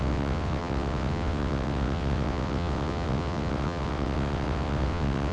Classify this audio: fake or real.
fake